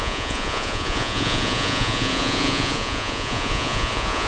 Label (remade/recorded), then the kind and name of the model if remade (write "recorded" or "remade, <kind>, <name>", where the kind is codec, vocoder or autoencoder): remade, vocoder, Vocos